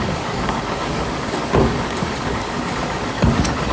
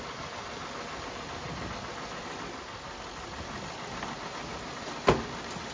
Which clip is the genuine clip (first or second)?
second